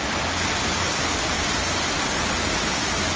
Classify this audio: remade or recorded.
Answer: recorded